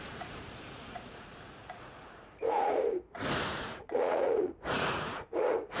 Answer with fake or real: fake